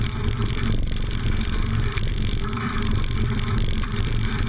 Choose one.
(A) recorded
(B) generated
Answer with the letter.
B